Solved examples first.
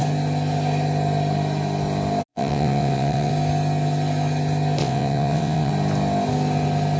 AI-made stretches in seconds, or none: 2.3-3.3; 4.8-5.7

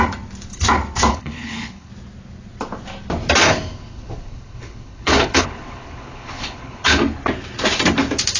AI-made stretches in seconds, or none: 1.1-1.9; 3.5-7.0

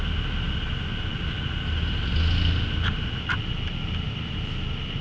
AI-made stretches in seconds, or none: none

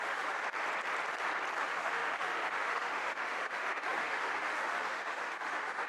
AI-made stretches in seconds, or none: 0.0-0.4; 1.6-5.9

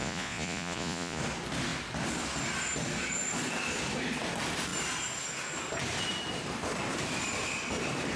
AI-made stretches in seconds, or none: 0.0-1.2